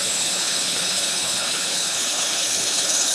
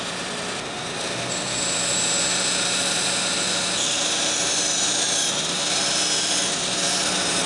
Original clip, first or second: second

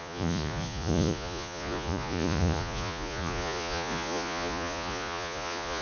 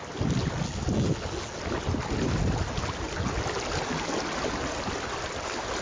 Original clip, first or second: second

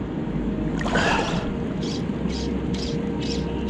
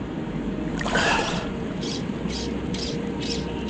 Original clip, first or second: first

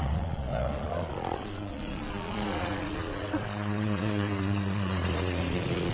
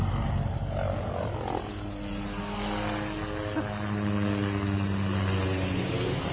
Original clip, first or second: second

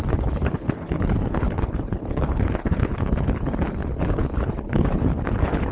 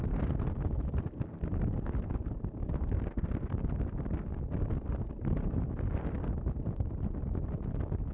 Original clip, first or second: second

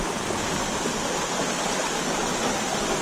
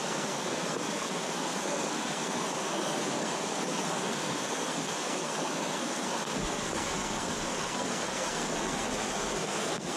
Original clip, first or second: first